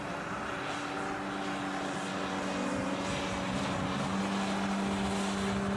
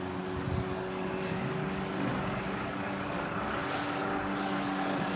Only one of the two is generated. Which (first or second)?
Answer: second